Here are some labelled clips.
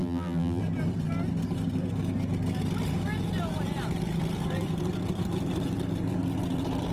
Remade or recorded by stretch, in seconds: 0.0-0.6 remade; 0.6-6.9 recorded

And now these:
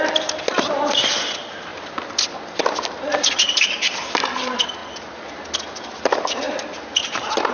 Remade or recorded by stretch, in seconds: 0.0-7.5 recorded